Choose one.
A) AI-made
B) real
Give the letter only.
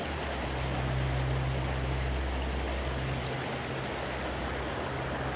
B